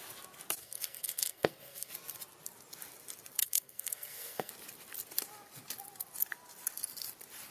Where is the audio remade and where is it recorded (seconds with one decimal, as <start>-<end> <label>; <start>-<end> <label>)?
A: 0.0-0.6 recorded; 0.6-1.9 remade; 1.9-3.4 recorded; 3.4-4.5 remade; 4.5-7.5 recorded

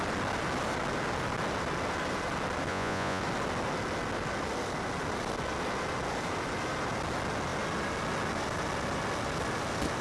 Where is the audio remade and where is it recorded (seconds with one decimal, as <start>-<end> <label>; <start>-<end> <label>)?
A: 0.0-2.7 recorded; 2.7-3.2 remade; 3.2-10.0 recorded